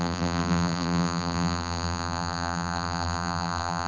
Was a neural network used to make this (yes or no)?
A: yes